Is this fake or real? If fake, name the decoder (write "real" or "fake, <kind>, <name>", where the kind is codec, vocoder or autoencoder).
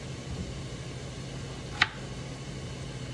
real